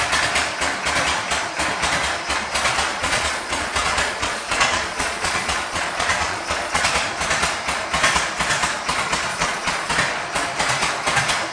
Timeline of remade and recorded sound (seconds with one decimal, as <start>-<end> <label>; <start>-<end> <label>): 0.0-2.9 recorded; 2.9-6.9 remade; 6.9-9.3 recorded; 9.3-9.9 remade; 9.9-11.5 recorded